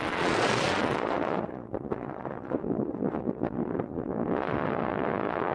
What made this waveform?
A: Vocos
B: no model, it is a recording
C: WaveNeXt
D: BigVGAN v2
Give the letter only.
A